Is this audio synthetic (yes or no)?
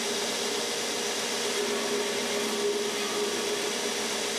no